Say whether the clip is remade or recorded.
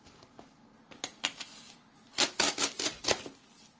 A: recorded